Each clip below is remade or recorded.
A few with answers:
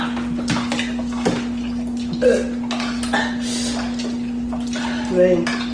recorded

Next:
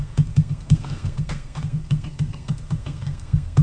remade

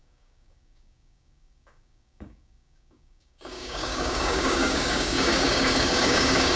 remade